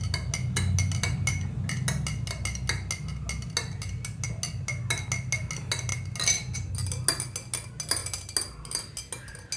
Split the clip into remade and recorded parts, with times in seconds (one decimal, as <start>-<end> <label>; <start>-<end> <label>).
0.0-9.6 recorded